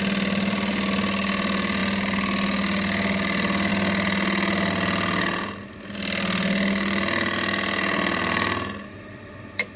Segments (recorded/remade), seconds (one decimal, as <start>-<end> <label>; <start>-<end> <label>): 0.0-9.8 recorded